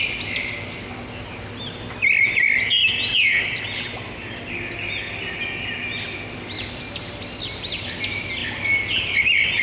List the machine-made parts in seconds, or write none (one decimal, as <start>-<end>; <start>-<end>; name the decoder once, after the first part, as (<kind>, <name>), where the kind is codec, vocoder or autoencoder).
none